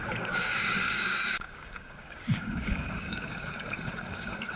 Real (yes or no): no